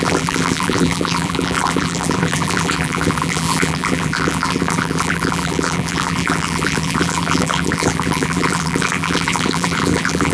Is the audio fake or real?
fake